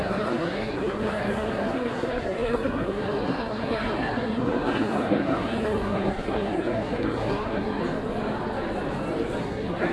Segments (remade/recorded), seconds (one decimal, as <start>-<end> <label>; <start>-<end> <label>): 0.0-7.8 remade; 7.8-9.4 recorded; 9.4-9.9 remade